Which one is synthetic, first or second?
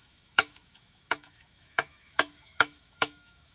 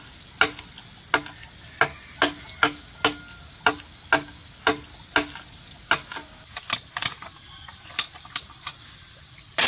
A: first